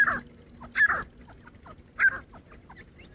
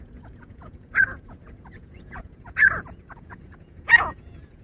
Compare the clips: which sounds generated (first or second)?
second